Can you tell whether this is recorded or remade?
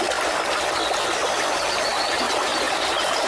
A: recorded